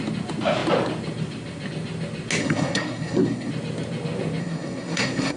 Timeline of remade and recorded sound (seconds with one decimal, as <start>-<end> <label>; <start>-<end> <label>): 0.0-2.4 recorded; 2.4-3.5 remade; 3.5-4.4 recorded; 4.4-5.4 remade